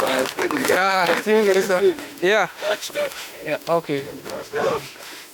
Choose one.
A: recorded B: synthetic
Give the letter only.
B